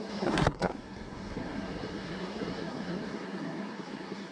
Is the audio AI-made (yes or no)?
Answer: yes